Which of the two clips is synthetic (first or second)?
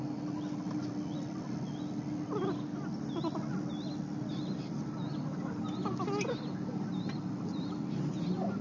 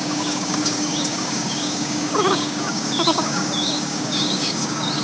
second